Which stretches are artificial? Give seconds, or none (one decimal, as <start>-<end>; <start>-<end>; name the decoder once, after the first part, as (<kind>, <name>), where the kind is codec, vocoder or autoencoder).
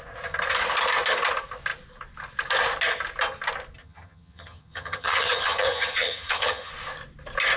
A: 3.8-6.7 (vocoder, HiFi-GAN)